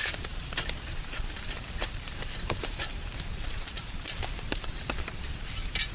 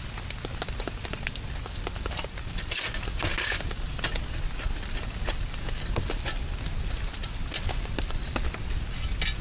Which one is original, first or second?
second